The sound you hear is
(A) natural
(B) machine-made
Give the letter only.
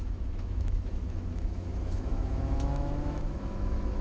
B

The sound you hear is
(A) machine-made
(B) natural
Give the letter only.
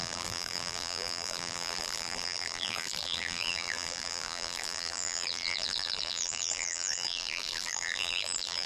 A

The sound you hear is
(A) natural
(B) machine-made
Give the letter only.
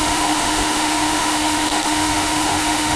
B